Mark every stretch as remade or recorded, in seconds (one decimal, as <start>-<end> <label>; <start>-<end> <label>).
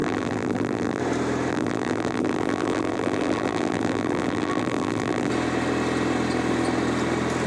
0.0-1.0 remade; 1.0-1.5 recorded; 1.5-5.3 remade; 5.3-7.5 recorded